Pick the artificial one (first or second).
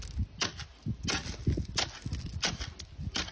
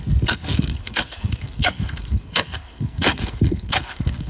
second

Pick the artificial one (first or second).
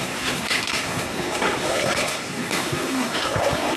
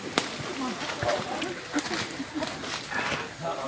first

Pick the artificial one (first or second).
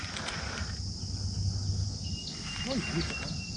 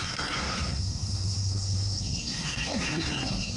second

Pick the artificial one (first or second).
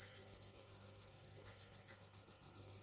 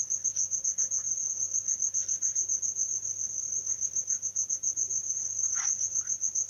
first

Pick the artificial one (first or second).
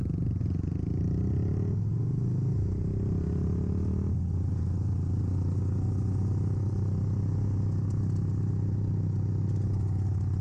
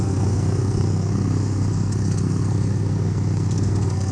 second